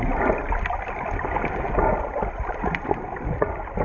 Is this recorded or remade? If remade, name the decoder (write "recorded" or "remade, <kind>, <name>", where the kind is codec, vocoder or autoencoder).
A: recorded